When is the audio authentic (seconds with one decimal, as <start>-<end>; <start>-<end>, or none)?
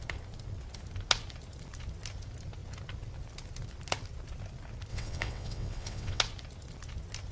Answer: 0.0-4.9; 6.2-7.3